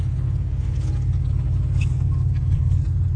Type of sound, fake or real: real